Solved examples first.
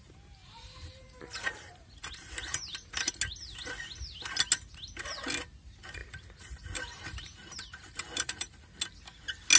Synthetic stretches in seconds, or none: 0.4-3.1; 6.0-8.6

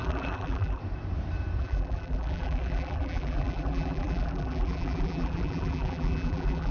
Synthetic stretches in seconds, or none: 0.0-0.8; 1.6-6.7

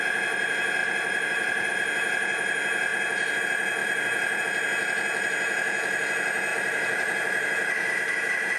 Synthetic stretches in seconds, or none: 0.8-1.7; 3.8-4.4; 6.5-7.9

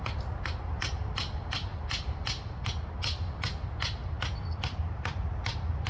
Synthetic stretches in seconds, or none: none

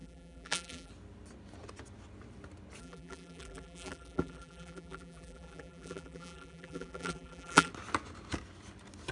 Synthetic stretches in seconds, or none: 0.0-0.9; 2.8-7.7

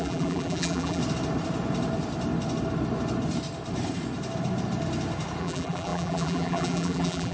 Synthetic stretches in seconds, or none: 0.0-1.0; 5.4-7.3